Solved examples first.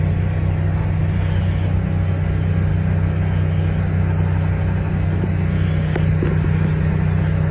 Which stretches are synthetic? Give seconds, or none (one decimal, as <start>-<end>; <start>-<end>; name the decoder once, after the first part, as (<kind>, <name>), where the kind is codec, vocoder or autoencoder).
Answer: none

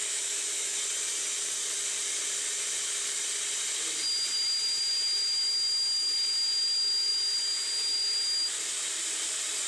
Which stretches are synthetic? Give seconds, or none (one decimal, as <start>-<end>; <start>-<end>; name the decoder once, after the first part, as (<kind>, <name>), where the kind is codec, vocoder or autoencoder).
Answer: 0.0-0.8 (autoencoder, DAC-VAE)

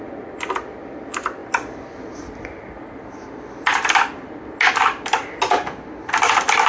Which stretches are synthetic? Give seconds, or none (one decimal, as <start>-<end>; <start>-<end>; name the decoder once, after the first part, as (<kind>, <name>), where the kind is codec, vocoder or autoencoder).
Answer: none

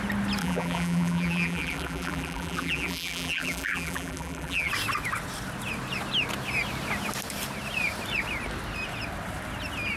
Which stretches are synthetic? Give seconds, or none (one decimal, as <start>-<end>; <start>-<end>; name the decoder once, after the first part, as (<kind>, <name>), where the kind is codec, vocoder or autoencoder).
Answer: 0.4-4.7 (vocoder, BigVGAN v2)

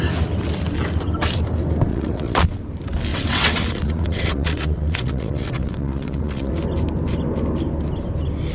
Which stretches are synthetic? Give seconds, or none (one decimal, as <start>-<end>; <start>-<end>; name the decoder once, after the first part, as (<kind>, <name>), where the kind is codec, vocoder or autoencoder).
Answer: 1.9-2.6 (vocoder, WaveNeXt); 3.1-6.5

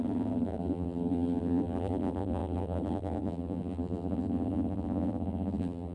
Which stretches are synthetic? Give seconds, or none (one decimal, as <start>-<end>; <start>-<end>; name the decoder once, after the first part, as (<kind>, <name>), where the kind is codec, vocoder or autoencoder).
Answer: 0.0-5.9 (vocoder, BigVGAN v2)